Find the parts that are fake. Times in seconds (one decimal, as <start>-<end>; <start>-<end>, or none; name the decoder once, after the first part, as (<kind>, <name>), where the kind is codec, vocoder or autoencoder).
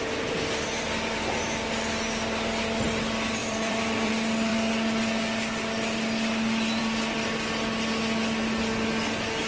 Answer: 3.4-4.1 (vocoder, BigVGAN v2)